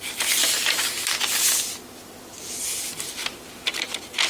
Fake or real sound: real